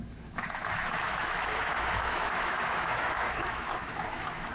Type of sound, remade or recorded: remade